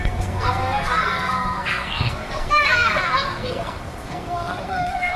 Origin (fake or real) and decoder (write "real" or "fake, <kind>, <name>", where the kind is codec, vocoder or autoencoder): fake, codec, SNAC